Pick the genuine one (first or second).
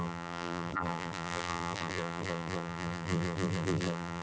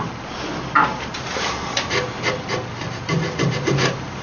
second